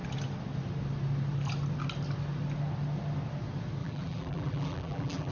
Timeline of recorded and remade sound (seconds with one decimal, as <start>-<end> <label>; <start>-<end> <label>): 0.0-3.8 recorded; 3.8-5.3 remade